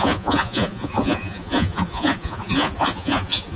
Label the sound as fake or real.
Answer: fake